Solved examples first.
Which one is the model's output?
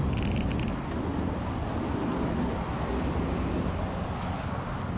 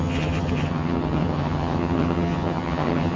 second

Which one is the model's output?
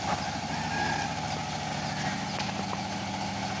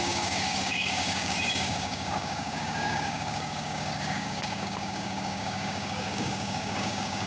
second